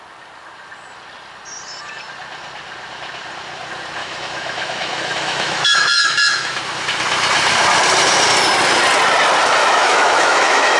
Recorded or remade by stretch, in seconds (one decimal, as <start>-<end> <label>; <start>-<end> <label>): 0.0-4.0 recorded; 4.0-6.6 remade; 6.6-9.6 recorded; 9.6-10.8 remade